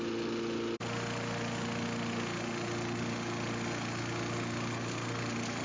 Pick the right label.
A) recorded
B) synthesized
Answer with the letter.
A